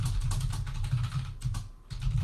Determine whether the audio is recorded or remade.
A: recorded